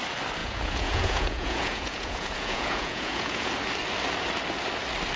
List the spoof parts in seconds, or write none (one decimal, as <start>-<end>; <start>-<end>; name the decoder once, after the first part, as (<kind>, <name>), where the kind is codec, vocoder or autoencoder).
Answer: 0.4-3.5 (vocoder, Vocos)